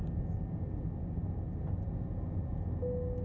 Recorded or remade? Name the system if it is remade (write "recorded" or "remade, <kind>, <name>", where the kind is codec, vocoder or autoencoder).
recorded